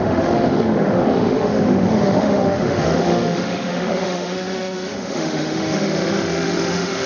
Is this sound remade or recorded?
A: remade